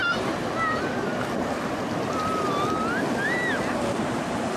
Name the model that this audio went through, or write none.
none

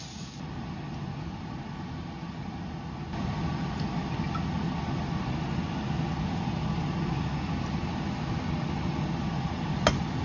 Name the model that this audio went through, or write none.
none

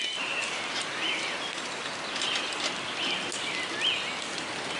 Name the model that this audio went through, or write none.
none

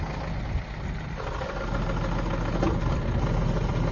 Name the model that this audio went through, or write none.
none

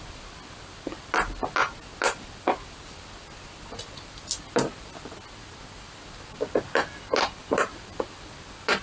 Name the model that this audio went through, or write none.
none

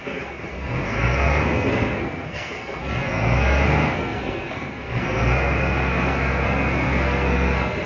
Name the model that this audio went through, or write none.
codec, SNAC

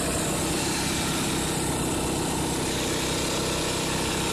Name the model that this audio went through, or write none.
none